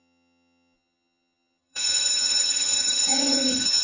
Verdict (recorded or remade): remade